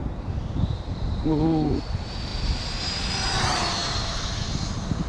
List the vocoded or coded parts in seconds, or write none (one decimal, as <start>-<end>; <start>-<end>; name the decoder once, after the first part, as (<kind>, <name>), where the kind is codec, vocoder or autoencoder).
0.0-1.2 (vocoder, BigVGAN v2); 2.3-3.1; 3.8-4.5